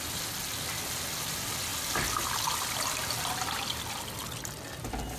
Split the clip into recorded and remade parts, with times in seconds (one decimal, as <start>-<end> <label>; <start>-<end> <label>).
0.0-5.2 recorded